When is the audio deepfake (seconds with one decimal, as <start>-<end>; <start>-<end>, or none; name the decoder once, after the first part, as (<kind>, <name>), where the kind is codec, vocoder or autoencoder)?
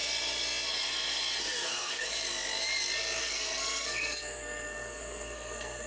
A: 1.4-2.0 (codec, SNAC); 3.2-5.9